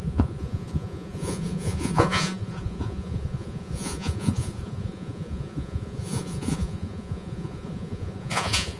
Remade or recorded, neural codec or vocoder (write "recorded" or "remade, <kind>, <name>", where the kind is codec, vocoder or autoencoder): remade, vocoder, Vocos